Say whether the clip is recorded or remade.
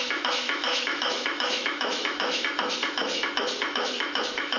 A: remade